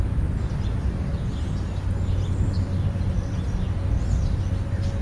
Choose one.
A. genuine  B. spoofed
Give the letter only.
A